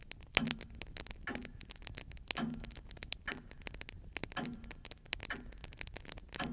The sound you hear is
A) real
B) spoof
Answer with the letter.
A